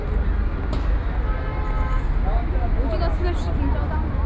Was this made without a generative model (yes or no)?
yes